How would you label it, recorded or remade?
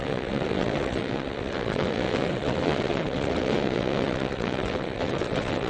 remade